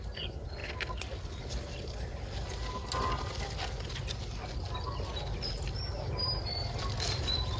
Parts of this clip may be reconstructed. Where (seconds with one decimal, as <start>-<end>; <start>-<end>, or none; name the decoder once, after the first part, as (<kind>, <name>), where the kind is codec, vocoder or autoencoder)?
none